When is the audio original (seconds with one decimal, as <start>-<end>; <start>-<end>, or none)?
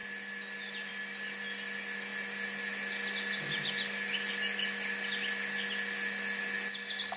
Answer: 0.0-7.2